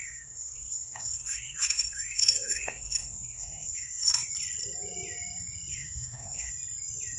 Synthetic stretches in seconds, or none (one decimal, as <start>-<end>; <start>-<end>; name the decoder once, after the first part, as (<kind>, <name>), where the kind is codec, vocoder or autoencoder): 0.0-4.3 (codec, SNAC); 5.7-6.5